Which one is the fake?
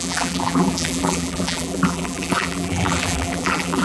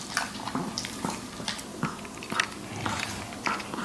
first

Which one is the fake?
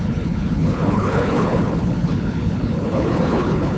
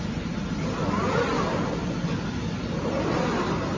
first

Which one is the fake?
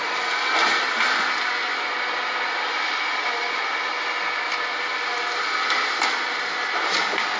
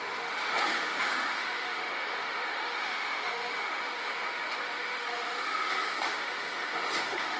second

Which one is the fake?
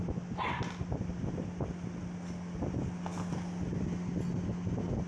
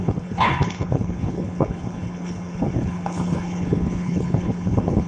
second